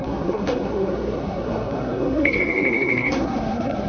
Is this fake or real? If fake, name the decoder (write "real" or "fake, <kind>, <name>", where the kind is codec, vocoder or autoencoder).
fake, codec, SNAC